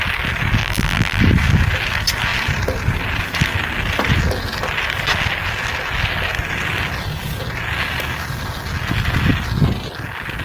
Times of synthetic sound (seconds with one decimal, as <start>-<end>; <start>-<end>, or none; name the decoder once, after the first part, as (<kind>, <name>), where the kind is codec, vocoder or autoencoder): 0.6-1.2 (vocoder, BigVGAN v2)